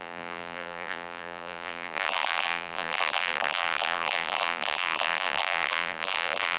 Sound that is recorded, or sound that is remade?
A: remade